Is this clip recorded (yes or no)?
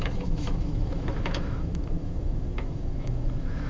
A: no